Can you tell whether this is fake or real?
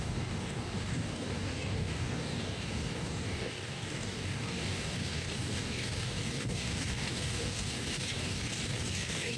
fake